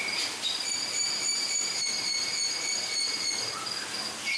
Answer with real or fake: real